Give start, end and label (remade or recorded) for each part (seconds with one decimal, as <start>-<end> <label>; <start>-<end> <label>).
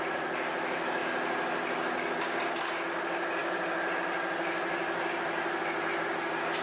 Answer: 0.0-6.6 recorded